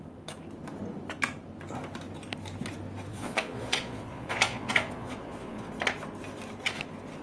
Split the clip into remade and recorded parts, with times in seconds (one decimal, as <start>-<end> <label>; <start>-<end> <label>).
0.0-3.1 recorded; 3.1-5.7 remade; 5.7-7.2 recorded